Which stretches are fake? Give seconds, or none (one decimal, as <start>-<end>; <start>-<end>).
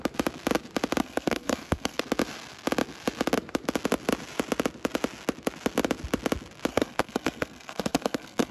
1.0-2.0; 6.7-8.5